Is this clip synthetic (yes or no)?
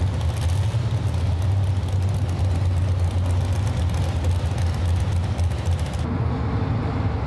no